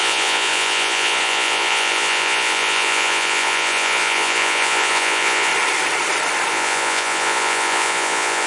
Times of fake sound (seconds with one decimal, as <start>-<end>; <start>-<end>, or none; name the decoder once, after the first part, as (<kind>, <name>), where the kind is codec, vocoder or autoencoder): 0.0-5.5 (vocoder, Vocos); 6.5-8.5